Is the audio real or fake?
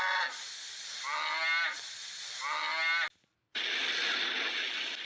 real